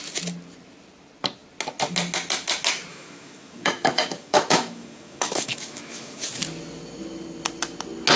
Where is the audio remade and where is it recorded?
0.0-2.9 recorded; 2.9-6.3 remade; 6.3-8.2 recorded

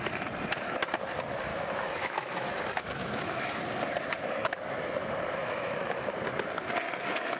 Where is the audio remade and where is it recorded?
0.0-1.5 recorded; 1.5-2.5 remade; 2.5-3.0 recorded; 3.0-3.6 remade; 3.6-5.4 recorded; 5.4-6.1 remade; 6.1-7.4 recorded

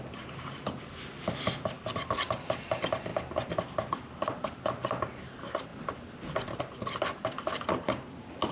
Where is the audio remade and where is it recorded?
0.0-8.5 recorded

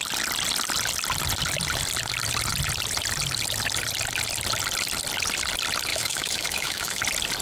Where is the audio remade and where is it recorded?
0.0-5.9 recorded; 5.9-7.0 remade; 7.0-7.4 recorded

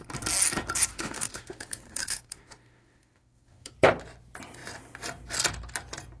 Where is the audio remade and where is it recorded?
0.0-0.9 recorded; 0.9-3.7 remade; 3.7-6.2 recorded

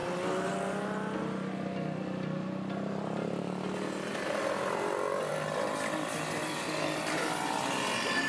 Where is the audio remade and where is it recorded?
0.0-8.3 recorded